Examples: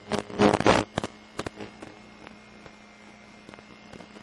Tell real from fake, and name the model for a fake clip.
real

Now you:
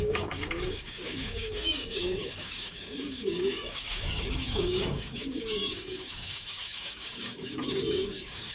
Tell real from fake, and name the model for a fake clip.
fake, codec, DAC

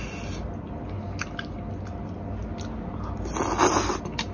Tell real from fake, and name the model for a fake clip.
real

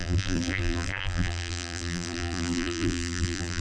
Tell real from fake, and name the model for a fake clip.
fake, vocoder, BigVGAN v2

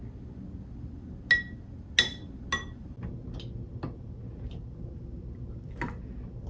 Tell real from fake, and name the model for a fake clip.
real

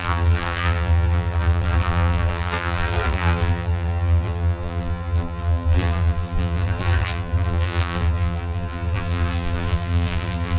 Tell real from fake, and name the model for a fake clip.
fake, vocoder, BigVGAN v2